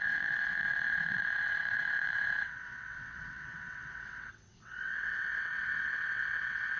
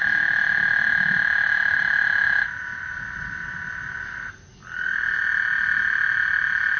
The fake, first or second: first